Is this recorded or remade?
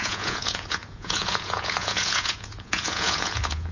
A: remade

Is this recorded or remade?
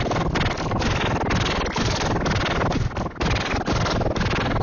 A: recorded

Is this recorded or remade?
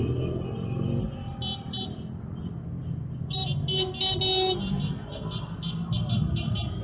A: recorded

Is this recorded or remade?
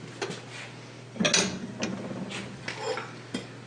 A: recorded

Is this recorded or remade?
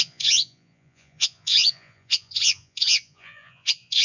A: remade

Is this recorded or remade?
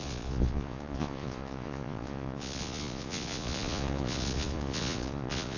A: remade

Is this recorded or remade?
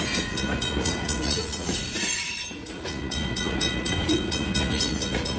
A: remade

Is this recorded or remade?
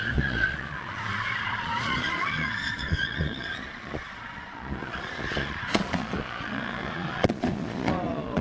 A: remade